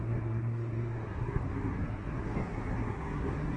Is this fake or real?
fake